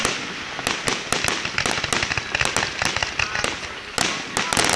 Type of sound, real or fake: real